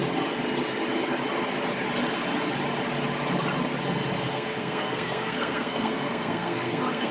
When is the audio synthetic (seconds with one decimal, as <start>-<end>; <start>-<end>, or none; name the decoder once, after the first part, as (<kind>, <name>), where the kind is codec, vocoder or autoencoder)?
4.3-7.1 (codec, SNAC)